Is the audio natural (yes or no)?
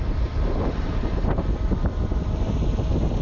yes